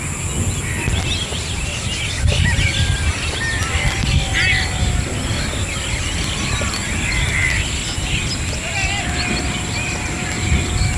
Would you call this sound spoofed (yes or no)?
no